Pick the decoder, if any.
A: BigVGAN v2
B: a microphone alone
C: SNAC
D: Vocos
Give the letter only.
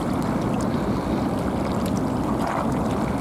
B